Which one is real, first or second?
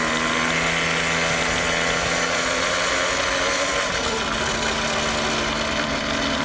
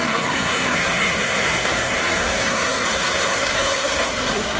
first